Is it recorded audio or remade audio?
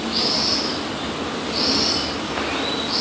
recorded